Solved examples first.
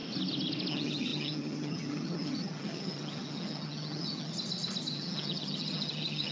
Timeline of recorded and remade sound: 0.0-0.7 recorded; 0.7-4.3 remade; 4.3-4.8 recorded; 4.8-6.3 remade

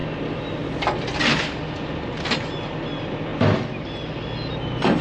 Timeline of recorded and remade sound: 0.0-5.0 recorded

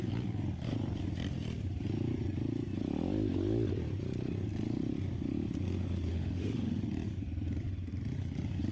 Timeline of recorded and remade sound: 0.0-6.1 recorded; 6.1-6.8 remade; 6.8-8.7 recorded

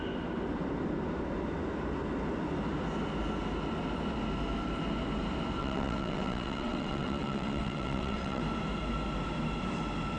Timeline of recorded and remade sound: 0.0-5.6 recorded; 5.6-8.4 remade; 8.4-10.2 recorded

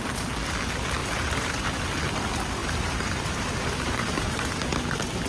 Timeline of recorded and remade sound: 0.0-1.0 recorded; 1.0-1.8 remade; 1.8-2.6 recorded; 2.6-4.5 remade; 4.5-5.3 recorded

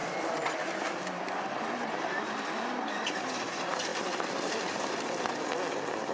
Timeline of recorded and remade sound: 0.0-3.2 remade; 3.2-3.9 recorded; 3.9-5.0 remade; 5.0-6.1 recorded

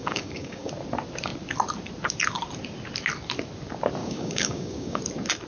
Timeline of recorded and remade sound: 0.0-0.7 remade; 0.7-4.0 recorded; 4.0-5.0 remade; 5.0-5.5 recorded